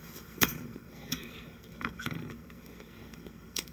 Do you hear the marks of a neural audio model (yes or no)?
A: yes